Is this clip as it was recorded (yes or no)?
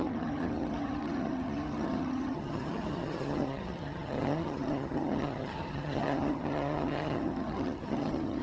no